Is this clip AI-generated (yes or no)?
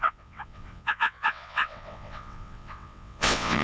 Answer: yes